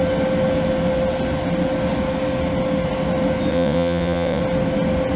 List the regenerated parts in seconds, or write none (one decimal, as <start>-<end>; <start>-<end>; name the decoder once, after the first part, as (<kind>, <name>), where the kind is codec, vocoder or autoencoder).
3.5-4.4 (vocoder, WaveNeXt)